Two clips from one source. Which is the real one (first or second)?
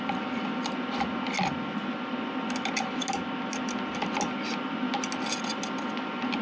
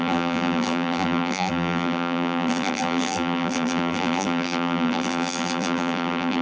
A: first